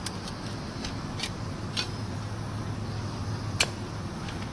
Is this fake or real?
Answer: real